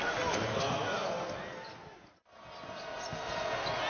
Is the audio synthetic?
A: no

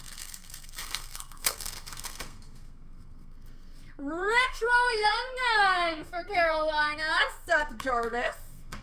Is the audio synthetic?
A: yes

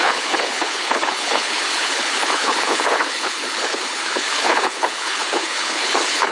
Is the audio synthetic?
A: yes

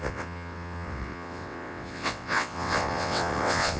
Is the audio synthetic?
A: yes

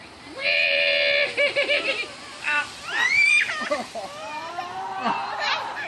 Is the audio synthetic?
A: yes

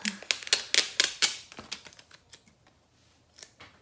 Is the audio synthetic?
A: no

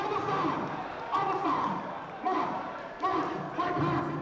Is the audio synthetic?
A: no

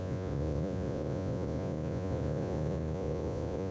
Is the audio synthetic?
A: yes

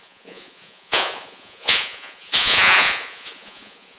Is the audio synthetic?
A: yes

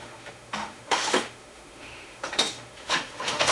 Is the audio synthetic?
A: yes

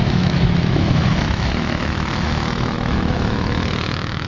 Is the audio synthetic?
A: yes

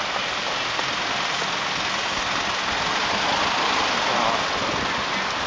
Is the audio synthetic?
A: no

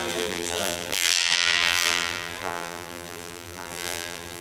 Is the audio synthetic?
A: yes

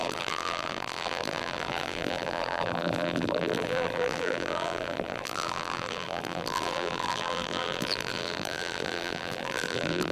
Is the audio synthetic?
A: yes